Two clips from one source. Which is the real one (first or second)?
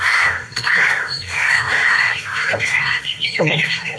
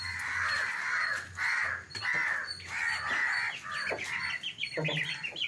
second